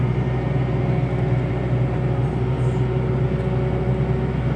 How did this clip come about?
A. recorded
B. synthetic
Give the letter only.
A